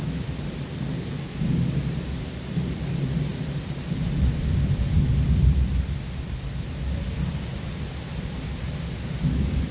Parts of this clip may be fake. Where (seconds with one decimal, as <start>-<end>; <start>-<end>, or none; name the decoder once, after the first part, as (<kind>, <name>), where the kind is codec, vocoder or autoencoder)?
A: none